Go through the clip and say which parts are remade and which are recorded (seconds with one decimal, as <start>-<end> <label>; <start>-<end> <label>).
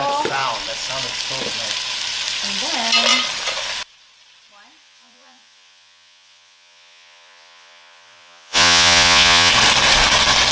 0.0-4.8 recorded; 4.8-9.5 remade; 9.5-10.5 recorded